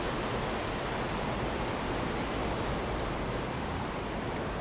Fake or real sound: real